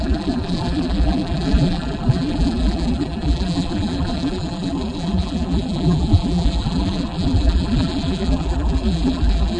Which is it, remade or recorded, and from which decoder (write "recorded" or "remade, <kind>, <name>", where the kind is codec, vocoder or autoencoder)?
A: remade, vocoder, BigVGAN v2